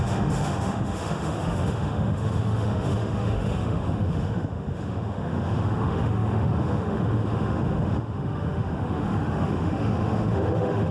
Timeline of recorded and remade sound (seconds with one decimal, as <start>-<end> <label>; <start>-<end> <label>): 0.0-10.9 remade